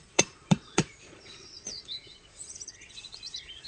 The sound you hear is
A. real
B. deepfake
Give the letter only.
B